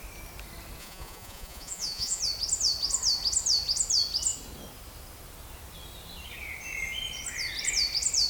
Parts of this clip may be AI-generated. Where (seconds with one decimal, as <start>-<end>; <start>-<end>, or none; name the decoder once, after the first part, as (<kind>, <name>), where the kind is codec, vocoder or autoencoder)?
0.8-2.2 (vocoder, Vocos)